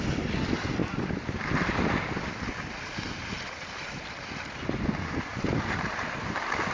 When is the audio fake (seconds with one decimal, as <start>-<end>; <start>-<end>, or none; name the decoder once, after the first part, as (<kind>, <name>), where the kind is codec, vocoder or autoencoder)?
0.8-4.8 (vocoder, BigVGAN v2); 5.3-6.2